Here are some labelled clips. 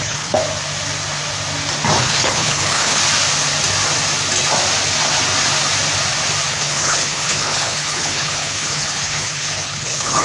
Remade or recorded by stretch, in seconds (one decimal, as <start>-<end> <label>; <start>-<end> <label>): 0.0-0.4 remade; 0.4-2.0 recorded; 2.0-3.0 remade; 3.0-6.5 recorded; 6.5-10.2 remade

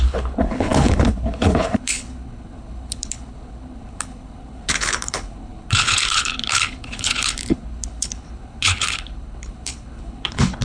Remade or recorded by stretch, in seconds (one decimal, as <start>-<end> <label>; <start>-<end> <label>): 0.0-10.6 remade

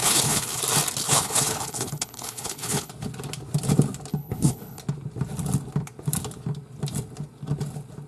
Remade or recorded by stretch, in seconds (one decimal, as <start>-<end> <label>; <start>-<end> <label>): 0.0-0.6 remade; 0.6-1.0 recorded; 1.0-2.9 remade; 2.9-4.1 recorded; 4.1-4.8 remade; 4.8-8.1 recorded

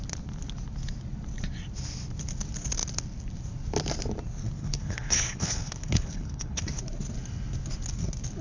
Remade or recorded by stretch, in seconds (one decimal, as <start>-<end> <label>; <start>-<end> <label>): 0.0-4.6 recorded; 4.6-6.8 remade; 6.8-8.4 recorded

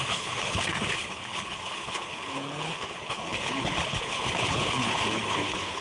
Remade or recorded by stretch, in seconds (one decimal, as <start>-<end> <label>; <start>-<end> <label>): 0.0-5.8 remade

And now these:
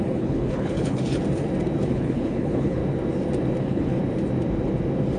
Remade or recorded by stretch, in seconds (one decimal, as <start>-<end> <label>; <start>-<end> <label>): 0.0-1.1 remade; 1.1-1.9 recorded; 1.9-2.8 remade; 2.8-3.6 recorded; 3.6-4.0 remade; 4.0-5.2 recorded

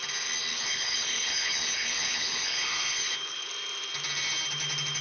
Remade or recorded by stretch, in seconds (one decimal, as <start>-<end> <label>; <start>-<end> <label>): 0.0-0.5 recorded; 0.5-3.5 remade; 3.5-5.0 recorded